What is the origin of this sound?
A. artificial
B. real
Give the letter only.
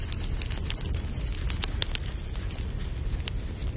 B